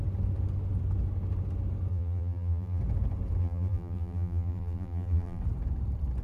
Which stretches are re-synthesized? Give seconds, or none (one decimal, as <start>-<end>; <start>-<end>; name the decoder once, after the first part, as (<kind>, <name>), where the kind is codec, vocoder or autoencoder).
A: 1.9-2.8 (vocoder, BigVGAN v2); 3.4-5.4